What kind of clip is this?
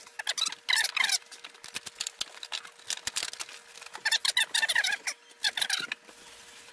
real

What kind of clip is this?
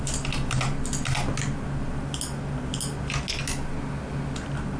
real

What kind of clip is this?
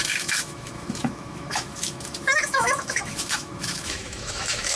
fake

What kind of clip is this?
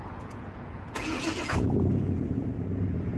fake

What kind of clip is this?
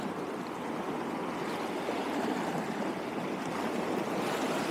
real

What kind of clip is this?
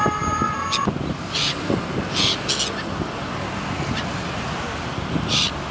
real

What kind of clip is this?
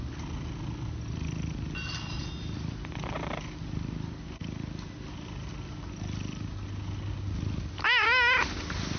real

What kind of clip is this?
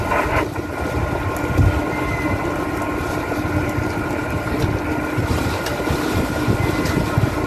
real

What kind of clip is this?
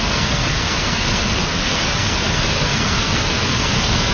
fake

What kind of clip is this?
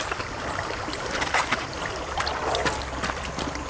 real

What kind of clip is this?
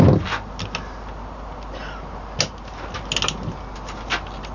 real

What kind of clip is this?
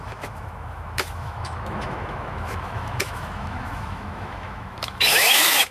fake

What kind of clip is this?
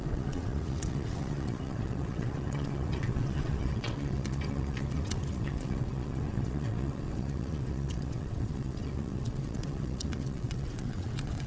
fake